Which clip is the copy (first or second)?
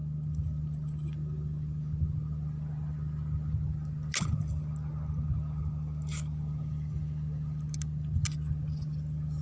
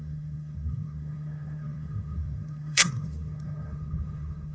second